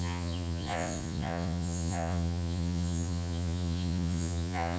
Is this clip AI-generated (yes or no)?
yes